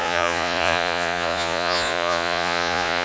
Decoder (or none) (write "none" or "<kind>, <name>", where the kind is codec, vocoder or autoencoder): vocoder, Vocos